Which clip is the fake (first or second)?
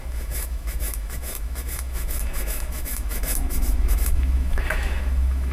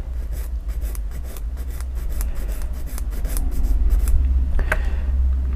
first